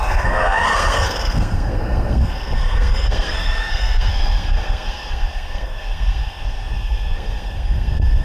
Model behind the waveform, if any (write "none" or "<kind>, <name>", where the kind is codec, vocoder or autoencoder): codec, SNAC